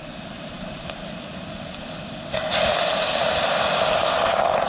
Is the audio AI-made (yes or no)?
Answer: no